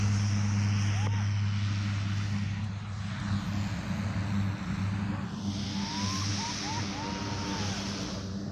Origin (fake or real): real